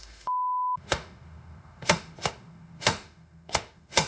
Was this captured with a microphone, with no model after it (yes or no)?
no